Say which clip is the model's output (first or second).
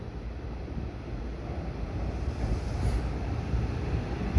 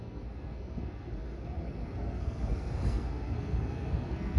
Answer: second